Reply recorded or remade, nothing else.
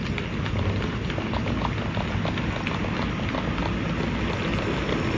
recorded